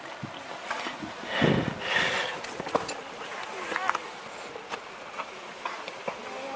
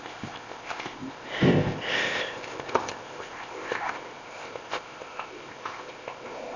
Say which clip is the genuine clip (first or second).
first